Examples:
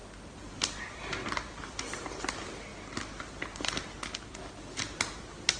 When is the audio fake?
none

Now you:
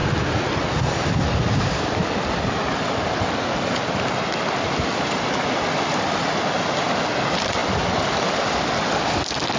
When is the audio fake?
none